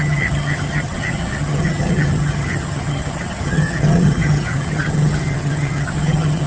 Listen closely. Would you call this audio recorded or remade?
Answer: remade